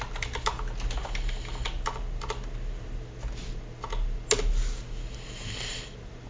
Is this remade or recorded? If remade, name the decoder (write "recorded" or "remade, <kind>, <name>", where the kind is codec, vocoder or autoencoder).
recorded